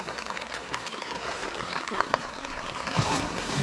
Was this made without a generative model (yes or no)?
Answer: no